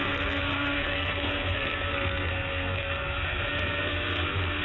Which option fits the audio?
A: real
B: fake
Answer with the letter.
B